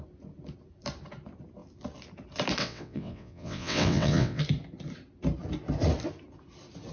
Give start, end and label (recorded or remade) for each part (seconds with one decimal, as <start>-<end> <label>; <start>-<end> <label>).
0.0-2.6 recorded; 2.6-4.4 remade; 4.4-6.9 recorded